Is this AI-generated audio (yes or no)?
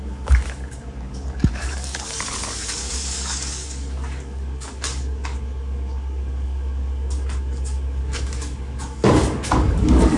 yes